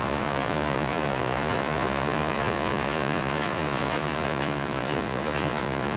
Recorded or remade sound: remade